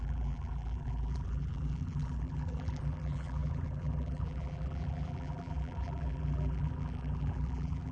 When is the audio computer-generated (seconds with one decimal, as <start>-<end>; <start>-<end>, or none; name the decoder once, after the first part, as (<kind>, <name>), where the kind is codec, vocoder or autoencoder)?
0.0-7.9 (vocoder, BigVGAN v2)